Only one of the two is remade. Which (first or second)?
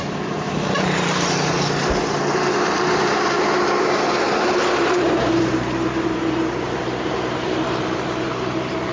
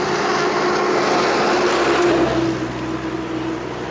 first